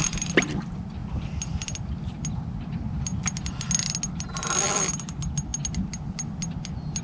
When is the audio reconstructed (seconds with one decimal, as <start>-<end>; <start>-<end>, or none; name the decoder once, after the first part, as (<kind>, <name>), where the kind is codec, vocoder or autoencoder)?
none